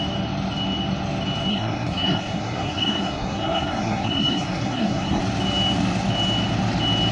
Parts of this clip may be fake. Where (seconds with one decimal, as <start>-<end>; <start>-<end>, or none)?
1.5-5.2